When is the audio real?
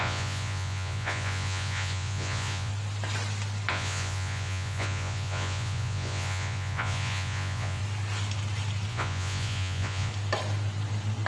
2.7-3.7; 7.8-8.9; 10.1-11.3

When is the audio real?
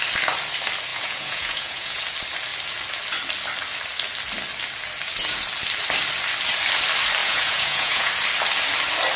0.0-0.9; 2.0-7.2; 8.1-9.2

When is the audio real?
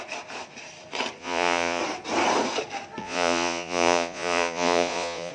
0.0-1.2; 1.8-3.0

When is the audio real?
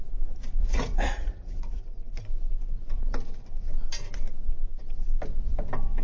0.0-0.6; 1.8-6.0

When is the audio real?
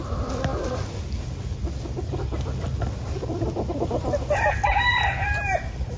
0.0-6.0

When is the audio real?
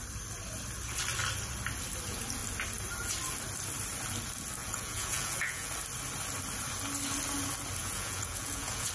0.0-4.6; 5.7-7.8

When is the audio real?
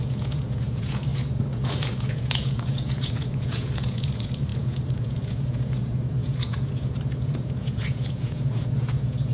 none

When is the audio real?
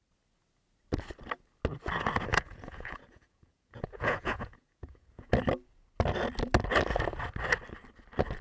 0.0-2.3; 5.3-8.4